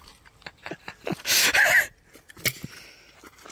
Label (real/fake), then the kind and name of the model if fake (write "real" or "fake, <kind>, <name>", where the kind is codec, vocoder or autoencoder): real